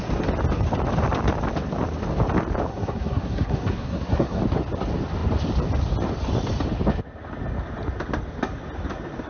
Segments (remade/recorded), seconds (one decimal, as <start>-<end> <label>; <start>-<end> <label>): 0.0-2.7 recorded; 2.7-4.4 remade; 4.4-9.3 recorded

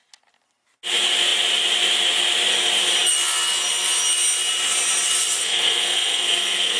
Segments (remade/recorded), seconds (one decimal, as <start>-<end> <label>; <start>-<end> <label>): 0.0-5.4 recorded; 5.4-6.8 remade

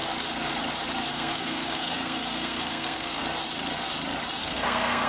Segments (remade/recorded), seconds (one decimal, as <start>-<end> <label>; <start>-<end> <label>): 0.0-1.1 recorded; 1.1-3.2 remade; 3.2-4.4 recorded; 4.4-5.1 remade

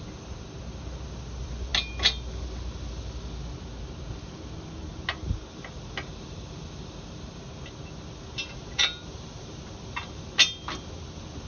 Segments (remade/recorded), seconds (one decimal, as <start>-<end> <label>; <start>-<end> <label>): 0.0-11.5 recorded

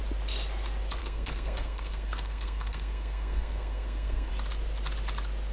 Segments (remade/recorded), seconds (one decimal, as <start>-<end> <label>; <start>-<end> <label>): 0.0-1.0 recorded; 1.0-4.3 remade; 4.3-5.5 recorded